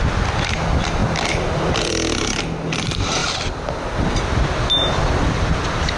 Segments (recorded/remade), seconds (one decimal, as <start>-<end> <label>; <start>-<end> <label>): 0.0-3.2 recorded; 3.2-4.9 remade; 4.9-6.0 recorded